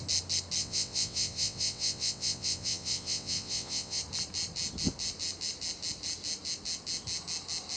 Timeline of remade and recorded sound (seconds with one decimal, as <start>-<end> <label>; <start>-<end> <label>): 0.0-0.6 recorded; 0.6-4.0 remade; 4.0-7.8 recorded